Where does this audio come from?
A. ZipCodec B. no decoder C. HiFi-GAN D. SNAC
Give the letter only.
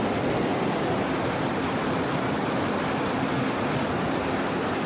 B